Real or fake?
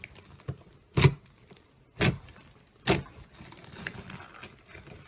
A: real